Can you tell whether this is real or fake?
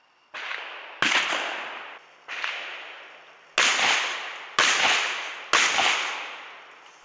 real